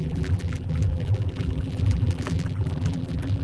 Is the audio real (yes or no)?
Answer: no